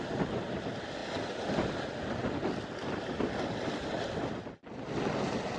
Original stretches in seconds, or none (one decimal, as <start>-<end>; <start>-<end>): 0.0-5.6